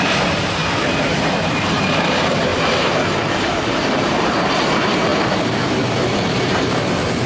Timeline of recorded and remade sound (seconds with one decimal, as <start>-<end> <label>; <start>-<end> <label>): 0.0-0.6 remade; 0.6-1.1 recorded; 1.1-5.1 remade; 5.1-6.3 recorded; 6.3-7.3 remade